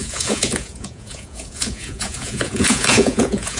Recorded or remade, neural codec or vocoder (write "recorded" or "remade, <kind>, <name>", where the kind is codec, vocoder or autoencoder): remade, vocoder, Vocos